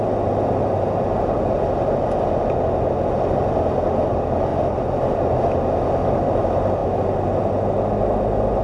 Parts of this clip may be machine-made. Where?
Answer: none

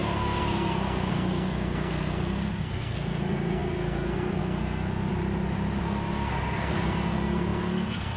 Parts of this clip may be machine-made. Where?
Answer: 0.0-5.1; 5.8-8.2